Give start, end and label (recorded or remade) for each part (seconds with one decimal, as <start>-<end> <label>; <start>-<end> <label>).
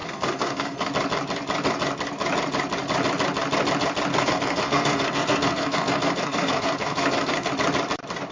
0.0-0.9 remade; 0.9-4.1 recorded; 4.1-7.5 remade; 7.5-8.3 recorded